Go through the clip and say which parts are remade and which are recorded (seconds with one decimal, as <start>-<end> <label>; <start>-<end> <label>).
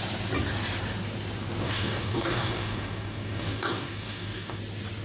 0.0-1.6 recorded; 1.6-4.6 remade; 4.6-5.0 recorded